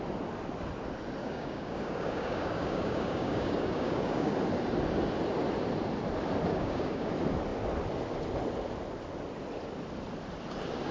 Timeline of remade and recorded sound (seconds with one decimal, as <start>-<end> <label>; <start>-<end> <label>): 0.0-1.2 recorded; 1.2-4.3 remade; 4.3-6.5 recorded; 6.5-7.1 remade; 7.1-10.9 recorded